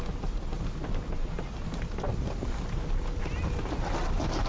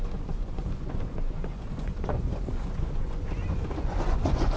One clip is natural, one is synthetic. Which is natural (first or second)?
first